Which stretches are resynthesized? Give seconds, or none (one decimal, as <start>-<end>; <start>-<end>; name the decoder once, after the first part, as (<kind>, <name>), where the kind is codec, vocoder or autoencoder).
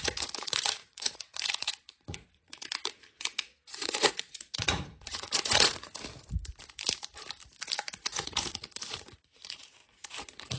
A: 0.0-6.0 (vocoder, Vocos); 7.9-9.8